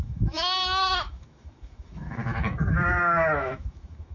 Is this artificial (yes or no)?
yes